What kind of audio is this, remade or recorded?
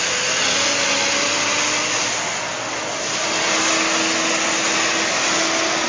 recorded